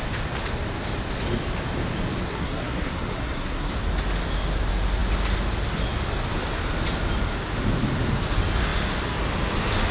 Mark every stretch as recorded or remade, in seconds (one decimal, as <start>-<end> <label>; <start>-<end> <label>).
0.0-2.3 recorded; 2.3-3.7 remade; 3.7-9.9 recorded